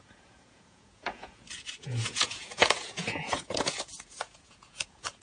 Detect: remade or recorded remade